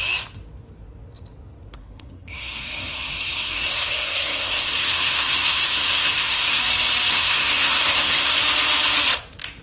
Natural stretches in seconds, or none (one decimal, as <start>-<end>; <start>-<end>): 0.0-1.8; 6.6-7.1; 8.4-9.6